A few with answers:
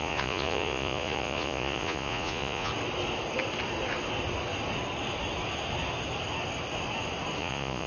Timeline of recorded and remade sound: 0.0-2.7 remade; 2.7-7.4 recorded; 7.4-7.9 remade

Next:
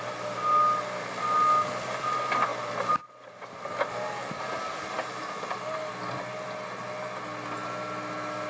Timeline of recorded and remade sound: 0.0-8.5 recorded

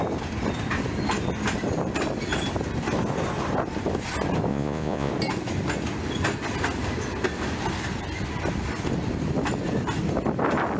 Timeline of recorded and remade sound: 0.0-4.5 recorded; 4.5-5.1 remade; 5.1-10.8 recorded

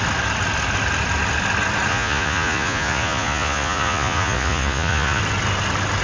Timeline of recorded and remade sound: 0.0-1.9 recorded; 1.9-5.2 remade; 5.2-6.0 recorded

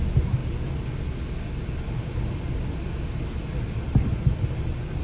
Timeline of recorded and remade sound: 0.0-5.0 recorded